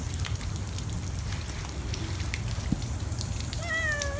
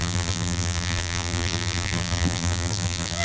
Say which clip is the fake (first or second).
second